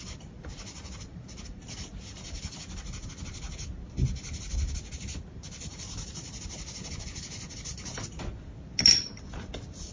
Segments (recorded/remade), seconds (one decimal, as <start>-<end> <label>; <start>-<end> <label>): 0.0-9.9 recorded